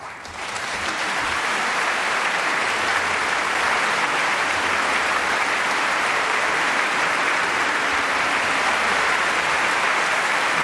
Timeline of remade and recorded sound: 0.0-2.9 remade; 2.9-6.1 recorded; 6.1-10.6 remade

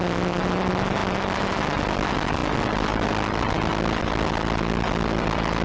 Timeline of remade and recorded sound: 0.0-5.6 recorded